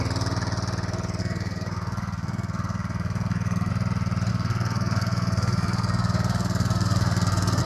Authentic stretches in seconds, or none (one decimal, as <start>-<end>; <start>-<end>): 0.0-1.2; 3.7-4.3